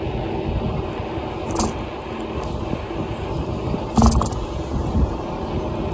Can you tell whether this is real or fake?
real